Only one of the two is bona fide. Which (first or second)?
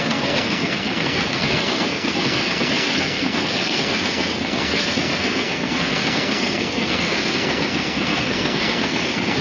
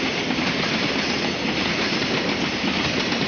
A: second